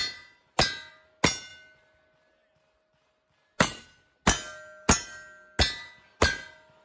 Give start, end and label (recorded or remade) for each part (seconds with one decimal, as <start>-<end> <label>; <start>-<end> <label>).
0.0-6.8 recorded